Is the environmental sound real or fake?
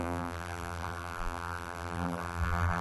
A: fake